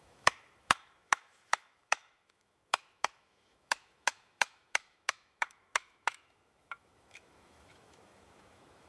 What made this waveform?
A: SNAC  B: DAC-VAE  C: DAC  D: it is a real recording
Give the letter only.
B